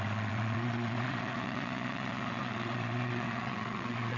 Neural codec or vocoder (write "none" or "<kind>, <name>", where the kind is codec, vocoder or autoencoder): vocoder, WaveNeXt